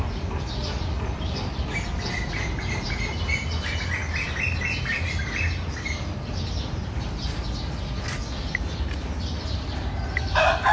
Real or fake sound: real